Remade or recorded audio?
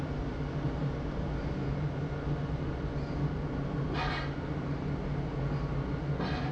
recorded